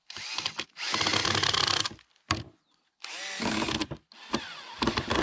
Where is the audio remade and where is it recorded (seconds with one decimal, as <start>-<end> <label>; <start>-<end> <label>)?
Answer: 0.0-1.2 recorded; 1.2-2.4 remade; 2.4-3.8 recorded; 3.8-4.3 remade; 4.3-5.2 recorded